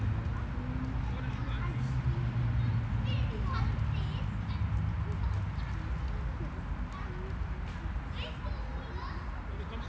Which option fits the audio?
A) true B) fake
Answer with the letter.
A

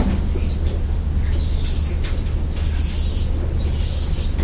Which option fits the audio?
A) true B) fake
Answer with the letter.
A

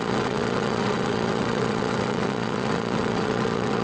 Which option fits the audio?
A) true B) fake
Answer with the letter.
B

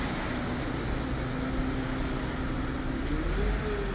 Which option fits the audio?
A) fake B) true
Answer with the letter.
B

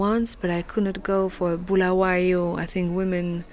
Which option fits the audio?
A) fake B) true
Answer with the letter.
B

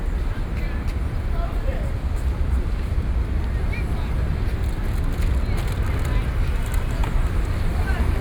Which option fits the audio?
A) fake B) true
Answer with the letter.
B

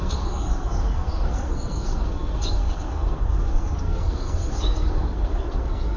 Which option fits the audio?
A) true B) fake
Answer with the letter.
B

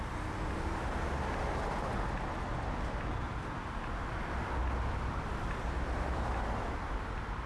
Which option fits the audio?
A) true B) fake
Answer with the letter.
A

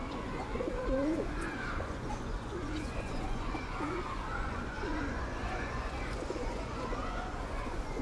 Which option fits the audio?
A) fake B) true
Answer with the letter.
A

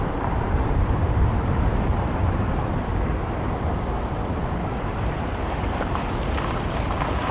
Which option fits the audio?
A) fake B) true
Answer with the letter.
A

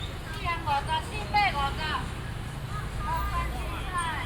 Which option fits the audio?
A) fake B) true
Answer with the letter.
B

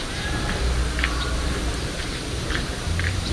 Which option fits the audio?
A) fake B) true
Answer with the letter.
A